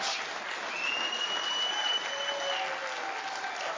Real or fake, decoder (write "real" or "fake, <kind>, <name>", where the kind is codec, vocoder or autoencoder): real